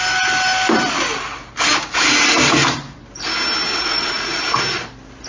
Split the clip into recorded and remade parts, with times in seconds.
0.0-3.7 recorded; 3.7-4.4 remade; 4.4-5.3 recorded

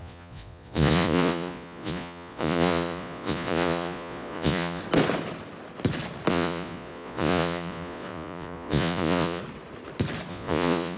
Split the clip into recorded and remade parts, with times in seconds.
0.0-4.8 remade; 4.8-6.3 recorded; 6.3-9.4 remade; 9.4-10.3 recorded; 10.3-11.0 remade

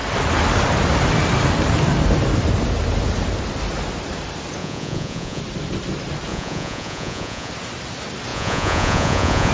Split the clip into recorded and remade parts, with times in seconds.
0.0-4.6 recorded; 4.6-5.4 remade; 5.4-6.3 recorded; 6.3-7.5 remade; 7.5-8.3 recorded; 8.3-9.5 remade

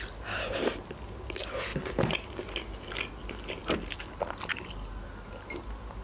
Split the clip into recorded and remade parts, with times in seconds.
0.0-6.0 recorded

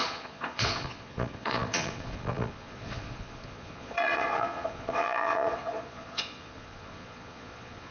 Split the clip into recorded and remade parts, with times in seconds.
0.0-7.9 remade

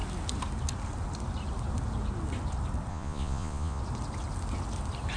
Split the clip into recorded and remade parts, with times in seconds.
0.0-2.9 recorded; 2.9-3.8 remade; 3.8-5.2 recorded

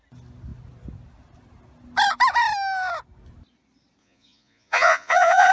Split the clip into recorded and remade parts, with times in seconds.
0.0-4.0 recorded; 4.0-5.5 remade